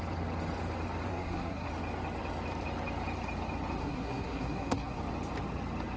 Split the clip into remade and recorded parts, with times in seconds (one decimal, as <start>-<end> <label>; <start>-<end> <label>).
0.0-1.1 recorded; 1.1-1.7 remade; 1.7-3.8 recorded; 3.8-5.0 remade; 5.0-6.0 recorded